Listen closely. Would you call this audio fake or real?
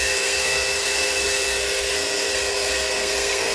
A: fake